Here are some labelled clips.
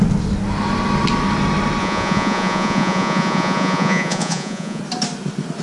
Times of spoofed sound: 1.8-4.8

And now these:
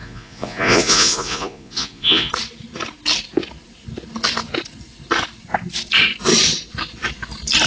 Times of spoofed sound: 0.0-2.3

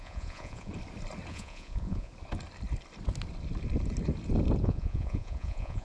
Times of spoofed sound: 0.0-0.7; 1.3-2.1; 4.6-5.8

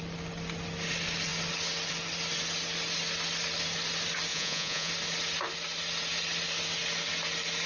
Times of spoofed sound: 4.3-4.9

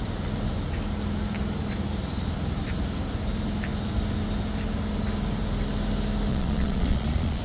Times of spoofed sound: 6.3-7.4

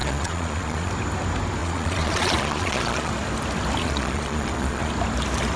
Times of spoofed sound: 0.0-0.9; 1.6-3.1; 3.8-4.9